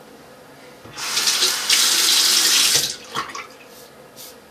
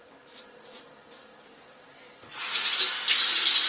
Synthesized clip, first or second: second